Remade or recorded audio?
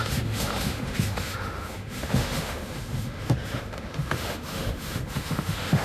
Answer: remade